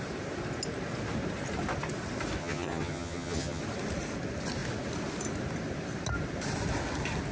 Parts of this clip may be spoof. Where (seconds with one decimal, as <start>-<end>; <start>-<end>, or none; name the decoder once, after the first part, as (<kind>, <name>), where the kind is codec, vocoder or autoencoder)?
2.4-3.6 (vocoder, HiFi-GAN)